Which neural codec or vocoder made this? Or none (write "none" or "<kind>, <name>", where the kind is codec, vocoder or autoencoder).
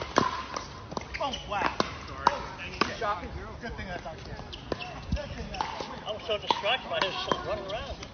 none